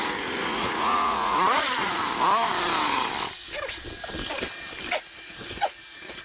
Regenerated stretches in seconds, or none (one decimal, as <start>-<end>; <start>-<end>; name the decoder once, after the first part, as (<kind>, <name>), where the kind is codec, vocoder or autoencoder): 0.0-2.0 (vocoder, Vocos); 4.9-6.2